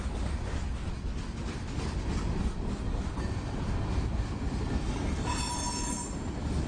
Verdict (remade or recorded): recorded